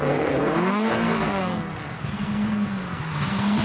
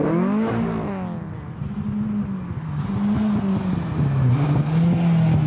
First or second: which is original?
second